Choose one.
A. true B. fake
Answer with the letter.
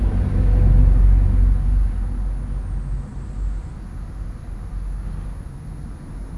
A